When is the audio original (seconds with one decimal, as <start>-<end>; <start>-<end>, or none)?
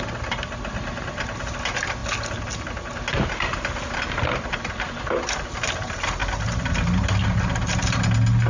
0.0-8.5